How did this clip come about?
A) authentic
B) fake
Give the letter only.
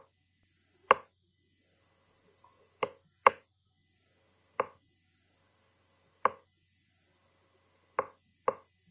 A